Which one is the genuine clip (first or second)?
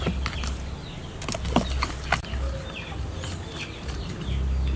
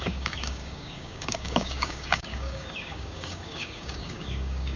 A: first